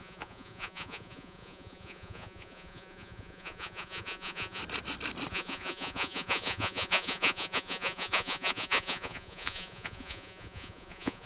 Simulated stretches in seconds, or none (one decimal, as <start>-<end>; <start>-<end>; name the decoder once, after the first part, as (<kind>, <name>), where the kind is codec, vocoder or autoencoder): 0.0-4.6 (vocoder, Vocos); 5.3-11.3